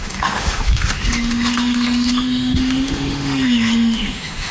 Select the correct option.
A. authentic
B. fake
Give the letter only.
B